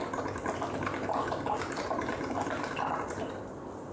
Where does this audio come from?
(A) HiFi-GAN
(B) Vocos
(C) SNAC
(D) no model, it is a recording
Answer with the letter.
D